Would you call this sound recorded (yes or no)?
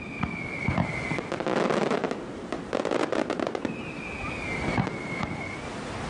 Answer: yes